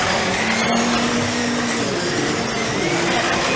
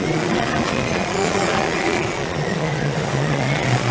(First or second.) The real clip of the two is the first